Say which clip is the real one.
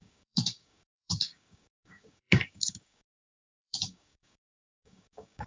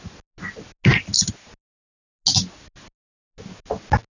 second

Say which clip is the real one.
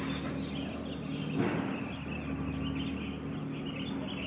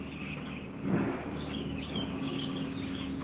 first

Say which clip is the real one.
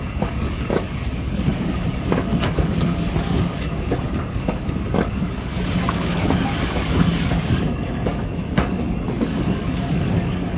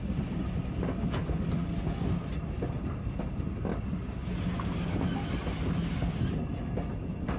second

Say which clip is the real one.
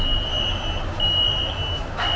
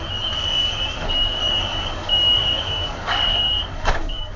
first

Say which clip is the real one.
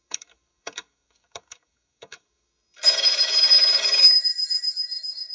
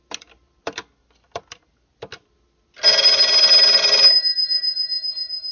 second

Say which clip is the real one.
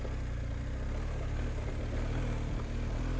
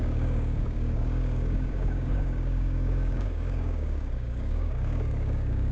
first